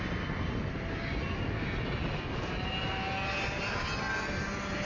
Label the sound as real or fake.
real